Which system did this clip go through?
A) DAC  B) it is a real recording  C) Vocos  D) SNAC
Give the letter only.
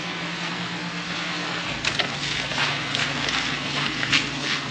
D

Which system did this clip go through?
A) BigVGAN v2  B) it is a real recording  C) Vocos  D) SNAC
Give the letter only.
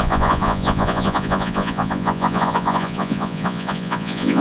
C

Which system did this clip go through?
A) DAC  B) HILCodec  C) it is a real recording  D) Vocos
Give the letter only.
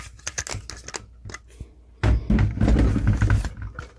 C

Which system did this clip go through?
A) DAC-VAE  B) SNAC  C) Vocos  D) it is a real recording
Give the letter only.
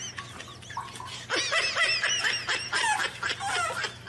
D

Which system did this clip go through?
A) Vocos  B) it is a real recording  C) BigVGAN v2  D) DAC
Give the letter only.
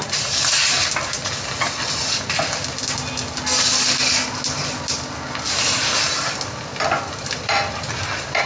B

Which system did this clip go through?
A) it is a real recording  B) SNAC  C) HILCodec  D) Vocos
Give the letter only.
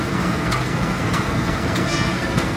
B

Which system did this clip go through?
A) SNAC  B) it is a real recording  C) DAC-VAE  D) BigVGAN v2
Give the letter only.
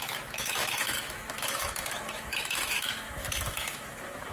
C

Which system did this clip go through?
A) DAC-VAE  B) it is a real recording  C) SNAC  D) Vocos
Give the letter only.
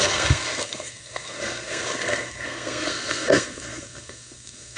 C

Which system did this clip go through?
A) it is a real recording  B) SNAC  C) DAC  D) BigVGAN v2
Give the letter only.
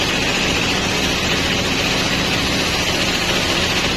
A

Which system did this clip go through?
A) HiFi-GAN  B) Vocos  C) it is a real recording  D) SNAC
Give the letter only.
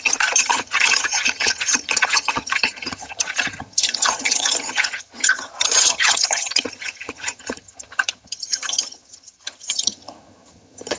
A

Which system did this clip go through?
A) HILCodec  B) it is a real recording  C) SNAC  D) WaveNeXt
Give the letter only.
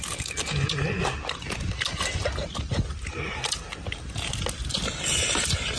B